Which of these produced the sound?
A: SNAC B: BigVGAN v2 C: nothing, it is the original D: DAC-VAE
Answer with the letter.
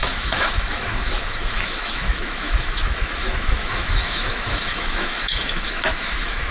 D